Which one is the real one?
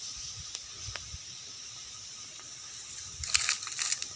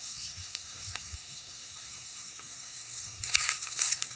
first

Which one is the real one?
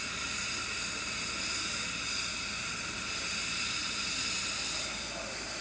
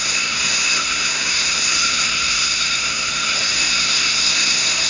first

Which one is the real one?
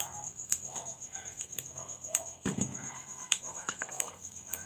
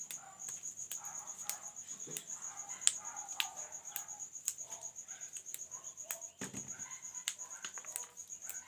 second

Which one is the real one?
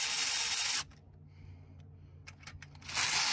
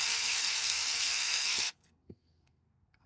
first